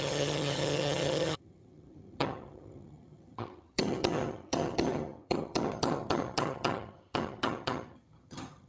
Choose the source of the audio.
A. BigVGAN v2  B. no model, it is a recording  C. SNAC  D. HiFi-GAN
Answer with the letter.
D